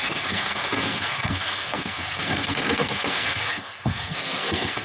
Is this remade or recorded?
remade